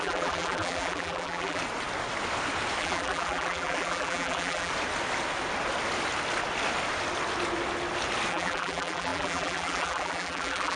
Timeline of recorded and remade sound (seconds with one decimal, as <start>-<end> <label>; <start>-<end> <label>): 0.0-1.6 remade; 1.6-2.8 recorded; 2.8-4.7 remade; 4.7-8.3 recorded; 8.3-10.8 remade